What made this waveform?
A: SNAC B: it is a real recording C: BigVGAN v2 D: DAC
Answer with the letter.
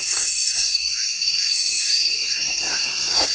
A